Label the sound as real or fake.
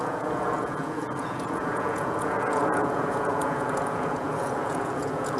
fake